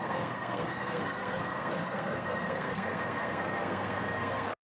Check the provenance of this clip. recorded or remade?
remade